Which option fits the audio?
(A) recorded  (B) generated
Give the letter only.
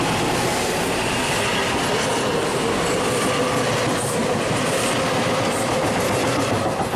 A